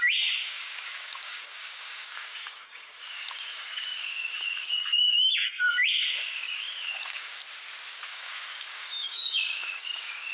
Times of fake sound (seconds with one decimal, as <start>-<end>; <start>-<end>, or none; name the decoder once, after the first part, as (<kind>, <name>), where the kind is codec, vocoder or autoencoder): 0.0-7.4 (codec, DAC); 7.9-10.3

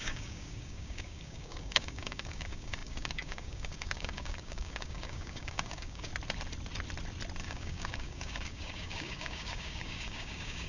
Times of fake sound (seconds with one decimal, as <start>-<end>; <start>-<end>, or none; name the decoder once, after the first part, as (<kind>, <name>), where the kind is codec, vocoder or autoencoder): 0.0-6.1 (codec, DAC); 7.4-10.7

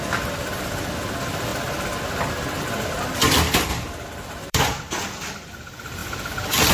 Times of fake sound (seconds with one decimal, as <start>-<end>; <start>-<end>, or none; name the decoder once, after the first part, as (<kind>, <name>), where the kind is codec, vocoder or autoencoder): 3.7-4.6 (vocoder, BigVGAN v2)

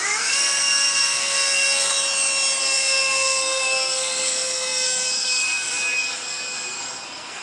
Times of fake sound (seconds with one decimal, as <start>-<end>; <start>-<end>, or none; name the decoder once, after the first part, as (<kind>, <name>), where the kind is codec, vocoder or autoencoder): 0.0-1.9 (codec, SNAC); 2.6-7.4

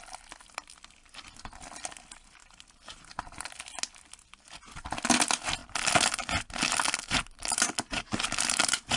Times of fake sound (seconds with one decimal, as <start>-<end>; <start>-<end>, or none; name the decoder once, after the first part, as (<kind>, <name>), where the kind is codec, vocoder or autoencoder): none

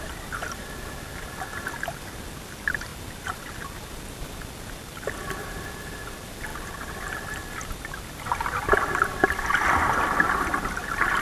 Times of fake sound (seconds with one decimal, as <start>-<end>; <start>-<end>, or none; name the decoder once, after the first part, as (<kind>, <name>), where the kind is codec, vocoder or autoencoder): 6.5-8.8 (vocoder, BigVGAN v2)

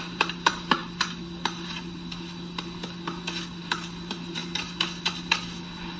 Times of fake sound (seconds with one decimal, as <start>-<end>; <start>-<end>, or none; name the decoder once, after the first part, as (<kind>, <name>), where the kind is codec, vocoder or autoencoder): 0.0-0.8 (vocoder, BigVGAN v2); 3.6-4.4

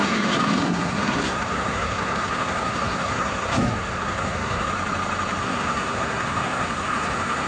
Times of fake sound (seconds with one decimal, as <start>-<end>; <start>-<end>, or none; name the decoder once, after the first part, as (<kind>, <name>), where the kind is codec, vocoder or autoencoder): 0.0-4.7 (codec, SNAC); 5.4-7.5